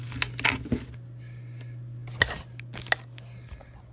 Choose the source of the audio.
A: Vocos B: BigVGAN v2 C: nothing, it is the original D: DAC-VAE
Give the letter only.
C